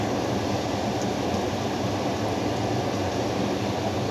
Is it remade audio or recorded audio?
recorded